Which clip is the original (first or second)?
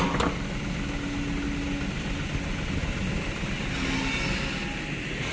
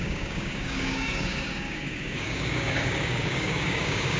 first